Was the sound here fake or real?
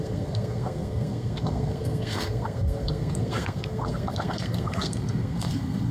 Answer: fake